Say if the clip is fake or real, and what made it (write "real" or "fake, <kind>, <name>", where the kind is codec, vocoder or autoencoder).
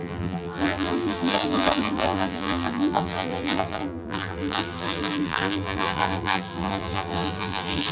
fake, vocoder, BigVGAN v2